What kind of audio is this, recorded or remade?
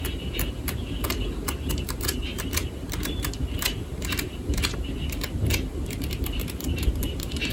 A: remade